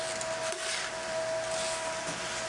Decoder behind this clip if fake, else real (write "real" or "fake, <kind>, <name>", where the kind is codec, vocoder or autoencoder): real